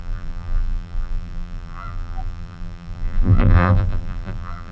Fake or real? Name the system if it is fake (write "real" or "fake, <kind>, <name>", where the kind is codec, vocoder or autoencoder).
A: fake, vocoder, BigVGAN v2